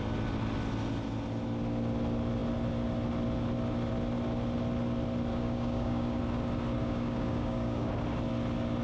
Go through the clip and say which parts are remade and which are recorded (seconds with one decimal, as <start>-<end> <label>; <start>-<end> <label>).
0.0-5.3 recorded; 5.3-6.2 remade; 6.2-6.8 recorded; 6.8-7.9 remade; 7.9-8.8 recorded